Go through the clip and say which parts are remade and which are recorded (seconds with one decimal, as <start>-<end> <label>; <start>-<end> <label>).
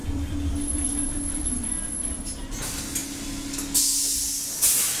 0.0-2.2 remade; 2.2-5.0 recorded